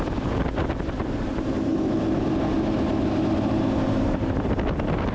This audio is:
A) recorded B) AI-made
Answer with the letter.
A